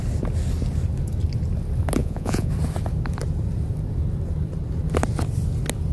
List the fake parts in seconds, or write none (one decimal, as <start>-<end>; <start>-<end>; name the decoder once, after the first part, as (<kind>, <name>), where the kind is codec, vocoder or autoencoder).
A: 2.0-2.5 (vocoder, Vocos)